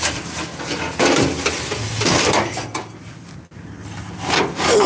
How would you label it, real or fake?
real